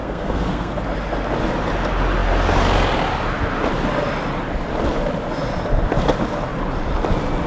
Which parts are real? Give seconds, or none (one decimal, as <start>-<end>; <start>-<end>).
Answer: 0.7-7.5